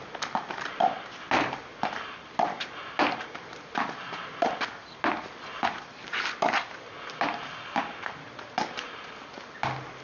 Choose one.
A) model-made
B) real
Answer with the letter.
B